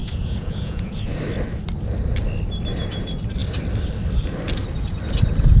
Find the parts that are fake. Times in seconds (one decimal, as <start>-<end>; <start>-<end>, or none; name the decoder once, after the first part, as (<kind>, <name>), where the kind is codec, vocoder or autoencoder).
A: 0.0-1.2 (vocoder, Vocos)